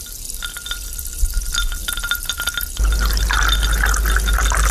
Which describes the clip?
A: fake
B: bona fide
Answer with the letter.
B